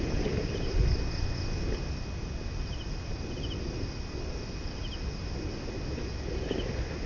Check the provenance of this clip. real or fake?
real